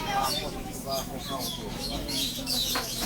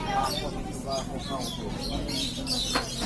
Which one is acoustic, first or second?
second